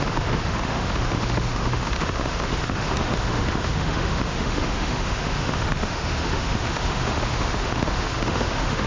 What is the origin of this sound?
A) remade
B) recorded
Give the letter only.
A